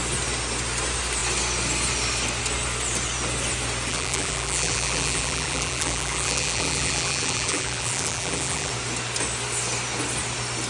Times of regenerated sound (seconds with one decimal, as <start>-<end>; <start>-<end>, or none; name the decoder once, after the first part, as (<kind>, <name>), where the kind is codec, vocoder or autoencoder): 3.9-8.7 (vocoder, BigVGAN v2)